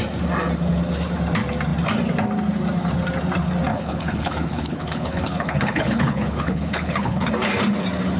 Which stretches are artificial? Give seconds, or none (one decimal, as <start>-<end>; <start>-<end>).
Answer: 3.7-7.3